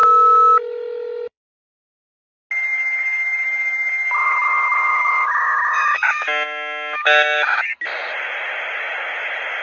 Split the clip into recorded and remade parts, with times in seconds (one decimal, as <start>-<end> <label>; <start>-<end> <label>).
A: 0.0-2.3 remade; 2.3-4.9 recorded; 4.9-7.7 remade; 7.7-9.6 recorded